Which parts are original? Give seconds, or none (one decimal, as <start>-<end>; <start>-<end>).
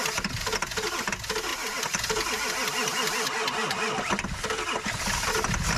0.0-5.8